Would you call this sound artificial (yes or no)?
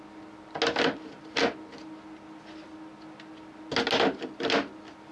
no